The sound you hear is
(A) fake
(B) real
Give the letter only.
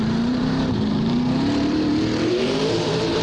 A